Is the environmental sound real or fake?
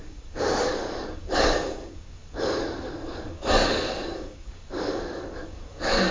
fake